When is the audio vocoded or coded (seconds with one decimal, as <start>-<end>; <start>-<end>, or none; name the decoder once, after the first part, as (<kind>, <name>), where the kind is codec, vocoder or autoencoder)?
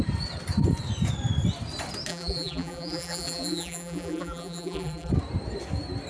2.1-5.1 (vocoder, BigVGAN v2)